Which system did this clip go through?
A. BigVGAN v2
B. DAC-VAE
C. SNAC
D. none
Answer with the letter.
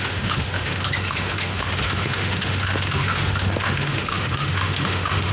B